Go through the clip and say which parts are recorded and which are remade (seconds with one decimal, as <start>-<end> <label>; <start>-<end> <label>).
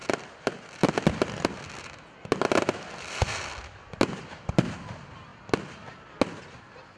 0.0-7.0 recorded